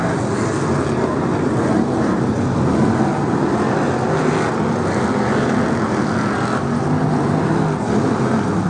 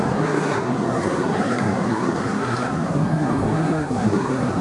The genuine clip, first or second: first